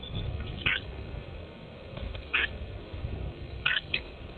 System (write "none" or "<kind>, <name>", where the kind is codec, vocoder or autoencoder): codec, SNAC